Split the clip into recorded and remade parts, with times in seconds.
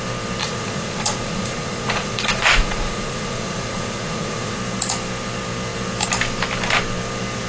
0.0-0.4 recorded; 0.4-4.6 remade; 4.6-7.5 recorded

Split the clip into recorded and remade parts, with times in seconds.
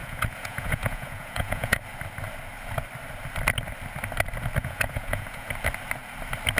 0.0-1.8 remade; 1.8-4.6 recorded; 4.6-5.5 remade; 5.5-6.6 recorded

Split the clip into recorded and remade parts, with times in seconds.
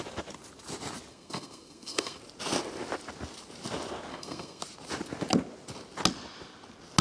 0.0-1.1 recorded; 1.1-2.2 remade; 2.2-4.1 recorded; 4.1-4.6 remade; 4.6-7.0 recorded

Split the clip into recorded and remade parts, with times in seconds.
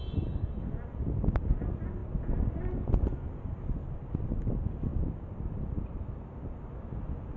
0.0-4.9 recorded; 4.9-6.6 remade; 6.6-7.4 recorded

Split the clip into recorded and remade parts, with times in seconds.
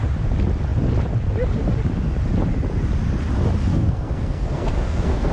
0.0-3.7 recorded; 3.7-5.3 remade